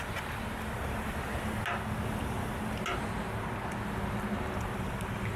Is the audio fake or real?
real